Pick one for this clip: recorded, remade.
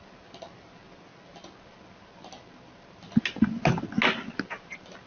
recorded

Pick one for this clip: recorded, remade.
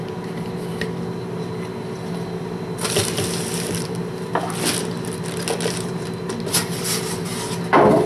recorded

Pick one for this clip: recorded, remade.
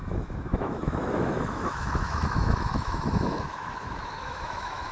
remade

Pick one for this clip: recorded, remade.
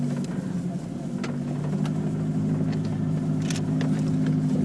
recorded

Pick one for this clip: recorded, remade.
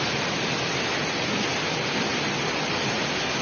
recorded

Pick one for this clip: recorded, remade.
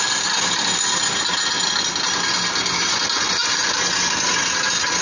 recorded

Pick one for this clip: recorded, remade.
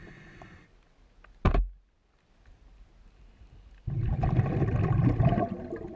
recorded